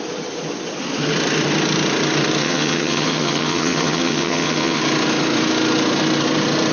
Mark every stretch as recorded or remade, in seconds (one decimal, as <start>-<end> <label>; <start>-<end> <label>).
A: 0.0-2.4 recorded; 2.4-4.8 remade; 4.8-6.7 recorded